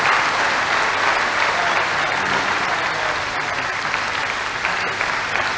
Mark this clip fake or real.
real